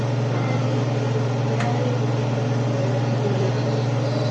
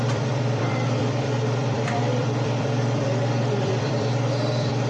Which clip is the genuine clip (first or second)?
first